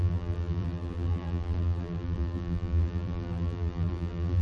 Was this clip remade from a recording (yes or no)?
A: yes